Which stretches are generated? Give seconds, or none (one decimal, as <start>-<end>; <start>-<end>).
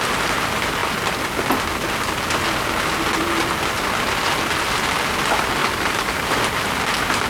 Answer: 5.6-6.4